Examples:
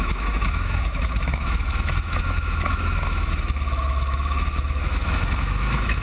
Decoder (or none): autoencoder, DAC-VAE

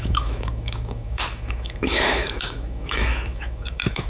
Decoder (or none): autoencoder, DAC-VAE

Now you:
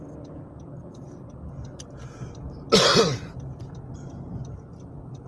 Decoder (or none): none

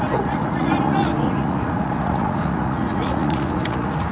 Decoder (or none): vocoder, Vocos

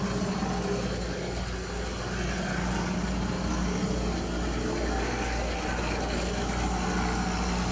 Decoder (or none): none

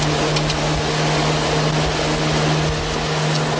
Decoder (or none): none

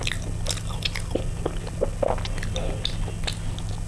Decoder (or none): none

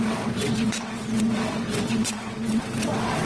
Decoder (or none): vocoder, WaveNeXt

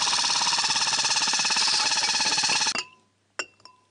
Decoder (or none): none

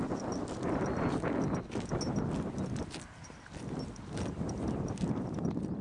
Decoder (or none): none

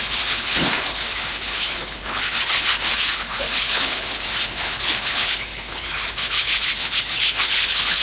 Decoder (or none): codec, HILCodec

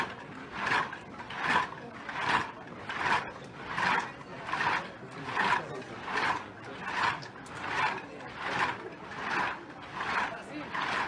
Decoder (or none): none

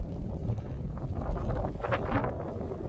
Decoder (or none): none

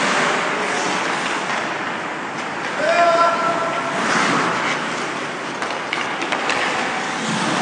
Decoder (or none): none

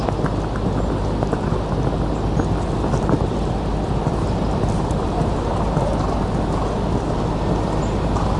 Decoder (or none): none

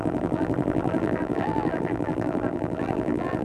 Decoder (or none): vocoder, BigVGAN v2